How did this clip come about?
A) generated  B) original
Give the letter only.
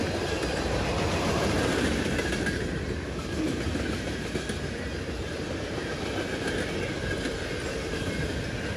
B